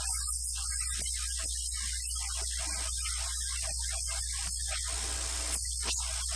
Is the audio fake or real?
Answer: real